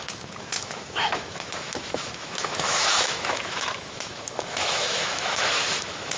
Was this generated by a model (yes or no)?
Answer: yes